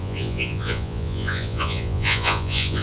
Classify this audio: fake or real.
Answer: fake